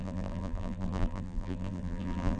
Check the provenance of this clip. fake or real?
fake